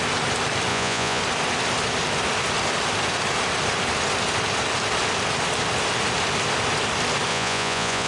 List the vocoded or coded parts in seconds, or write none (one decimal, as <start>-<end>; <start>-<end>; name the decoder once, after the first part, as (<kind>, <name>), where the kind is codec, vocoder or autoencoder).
0.7-1.2 (vocoder, Vocos); 7.3-8.1